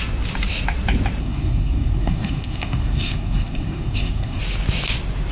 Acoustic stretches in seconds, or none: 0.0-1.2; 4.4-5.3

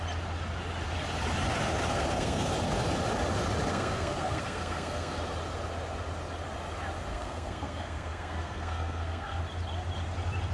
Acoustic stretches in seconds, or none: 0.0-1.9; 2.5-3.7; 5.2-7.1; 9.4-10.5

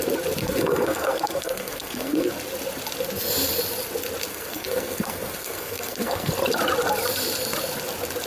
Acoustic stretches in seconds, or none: 0.0-0.4; 2.3-4.3; 6.3-8.3

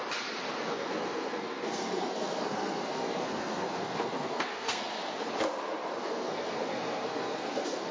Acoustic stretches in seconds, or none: 0.0-0.7; 5.0-6.0

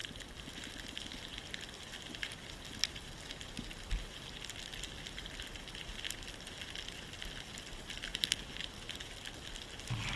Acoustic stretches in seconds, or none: 0.0-10.2

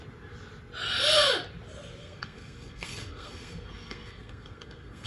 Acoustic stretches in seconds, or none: 0.0-2.0

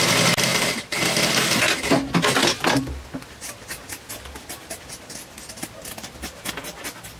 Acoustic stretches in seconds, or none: 0.0-7.2